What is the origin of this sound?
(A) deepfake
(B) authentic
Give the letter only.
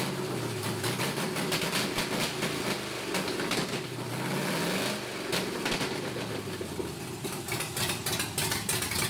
B